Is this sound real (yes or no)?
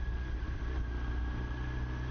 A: yes